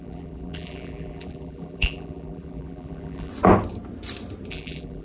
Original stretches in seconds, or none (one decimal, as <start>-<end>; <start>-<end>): 3.3-4.5